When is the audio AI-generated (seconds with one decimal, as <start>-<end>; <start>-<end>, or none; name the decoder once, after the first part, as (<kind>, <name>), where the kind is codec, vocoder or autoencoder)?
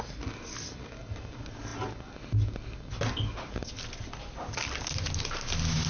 none